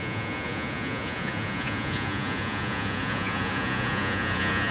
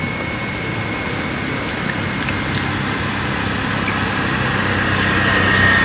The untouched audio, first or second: second